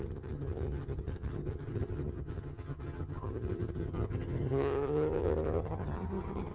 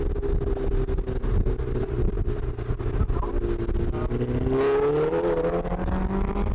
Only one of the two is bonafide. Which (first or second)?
second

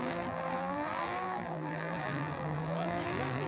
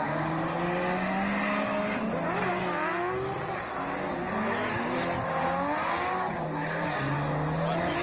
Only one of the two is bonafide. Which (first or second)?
second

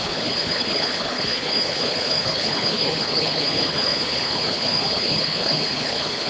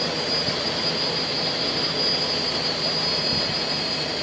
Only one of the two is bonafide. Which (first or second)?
second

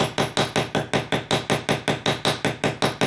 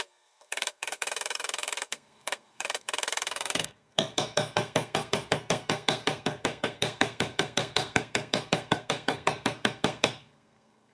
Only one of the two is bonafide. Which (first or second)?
first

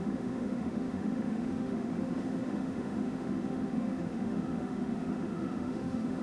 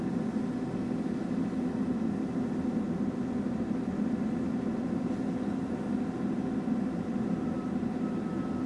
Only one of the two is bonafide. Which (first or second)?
second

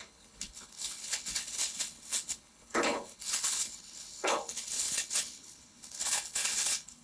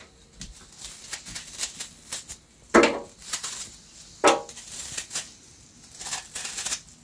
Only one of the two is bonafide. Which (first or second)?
second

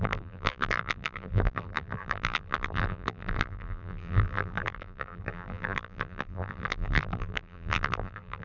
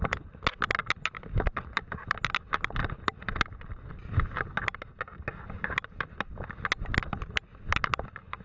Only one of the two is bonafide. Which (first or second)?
second